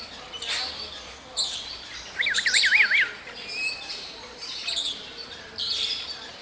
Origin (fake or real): real